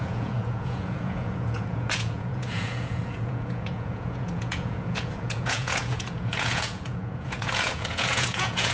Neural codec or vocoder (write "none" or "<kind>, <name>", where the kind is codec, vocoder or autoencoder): vocoder, Vocos